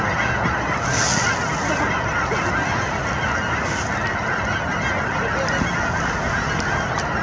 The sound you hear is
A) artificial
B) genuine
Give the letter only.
B